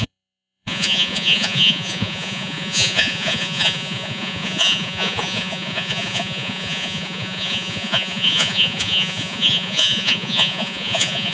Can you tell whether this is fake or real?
fake